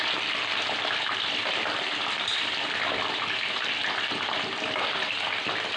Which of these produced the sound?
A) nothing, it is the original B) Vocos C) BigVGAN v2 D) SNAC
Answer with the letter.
A